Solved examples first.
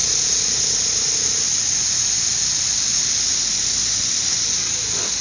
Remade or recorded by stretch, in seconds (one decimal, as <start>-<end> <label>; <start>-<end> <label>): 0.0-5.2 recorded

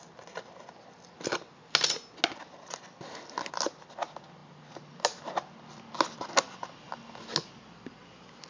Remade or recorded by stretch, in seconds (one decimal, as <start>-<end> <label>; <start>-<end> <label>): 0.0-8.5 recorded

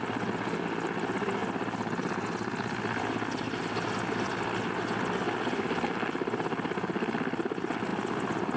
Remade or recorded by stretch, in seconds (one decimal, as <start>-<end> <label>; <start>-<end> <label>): 0.0-8.6 recorded

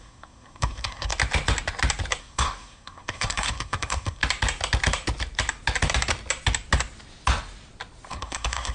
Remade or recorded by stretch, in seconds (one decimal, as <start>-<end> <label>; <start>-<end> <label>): 0.0-1.1 remade; 1.1-2.2 recorded; 2.2-4.2 remade; 4.2-8.1 recorded; 8.1-8.7 remade

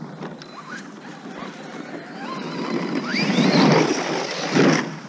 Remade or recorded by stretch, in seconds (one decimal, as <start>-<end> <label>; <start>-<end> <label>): 0.0-5.1 recorded

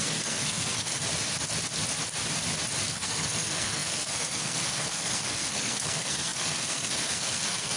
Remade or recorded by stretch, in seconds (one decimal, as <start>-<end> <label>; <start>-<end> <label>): 0.0-1.1 remade; 1.1-2.9 recorded; 2.9-7.8 remade